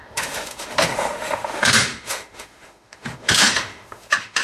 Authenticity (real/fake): fake